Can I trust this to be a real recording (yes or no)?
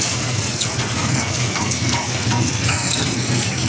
no